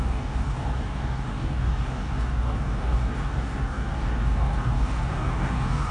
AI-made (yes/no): yes